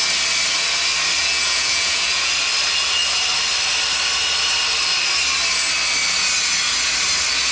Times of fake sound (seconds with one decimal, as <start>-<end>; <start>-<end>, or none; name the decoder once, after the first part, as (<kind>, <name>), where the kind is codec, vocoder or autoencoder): 1.2-2.3 (vocoder, Vocos)